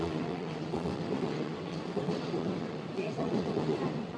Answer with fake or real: fake